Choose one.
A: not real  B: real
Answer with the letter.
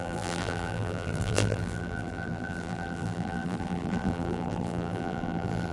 A